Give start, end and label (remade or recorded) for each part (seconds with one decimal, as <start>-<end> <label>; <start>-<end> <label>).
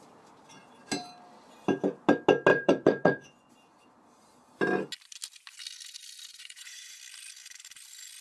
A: 0.0-2.5 recorded; 2.5-3.5 remade; 3.5-6.3 recorded; 6.3-7.0 remade; 7.0-8.2 recorded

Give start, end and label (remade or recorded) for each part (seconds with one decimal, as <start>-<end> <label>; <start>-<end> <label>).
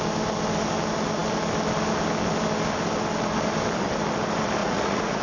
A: 0.0-4.6 recorded; 4.6-5.2 remade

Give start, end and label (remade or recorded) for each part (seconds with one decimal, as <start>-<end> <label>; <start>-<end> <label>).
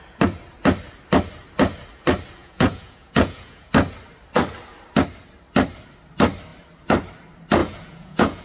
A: 0.0-2.4 recorded; 2.4-3.7 remade; 3.7-7.6 recorded; 7.6-8.4 remade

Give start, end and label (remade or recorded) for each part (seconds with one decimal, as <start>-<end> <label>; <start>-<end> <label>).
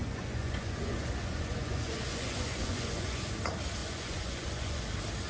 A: 0.0-3.2 remade; 3.2-3.8 recorded; 3.8-4.8 remade; 4.8-5.3 recorded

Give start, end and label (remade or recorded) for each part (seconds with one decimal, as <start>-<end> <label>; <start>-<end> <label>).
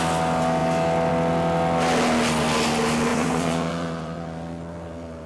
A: 0.0-3.1 recorded; 3.1-5.3 remade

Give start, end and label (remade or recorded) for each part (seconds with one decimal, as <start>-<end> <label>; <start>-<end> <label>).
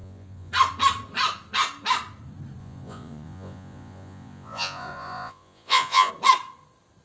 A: 0.0-0.5 remade; 0.5-2.6 recorded; 2.6-6.1 remade; 6.1-7.0 recorded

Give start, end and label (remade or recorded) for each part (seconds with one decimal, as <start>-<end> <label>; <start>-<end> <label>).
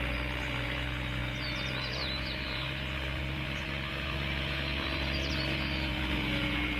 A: 0.0-6.8 remade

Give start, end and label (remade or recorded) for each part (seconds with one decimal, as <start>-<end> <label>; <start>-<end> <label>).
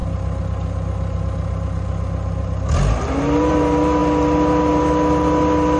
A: 0.0-5.8 recorded